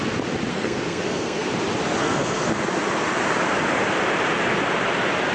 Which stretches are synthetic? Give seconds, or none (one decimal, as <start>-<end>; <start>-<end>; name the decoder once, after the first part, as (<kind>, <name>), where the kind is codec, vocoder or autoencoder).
0.5-1.5 (codec, SNAC); 2.0-2.5